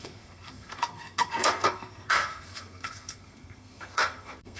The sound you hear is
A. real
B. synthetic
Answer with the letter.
B